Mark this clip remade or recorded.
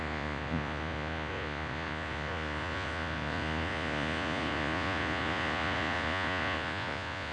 remade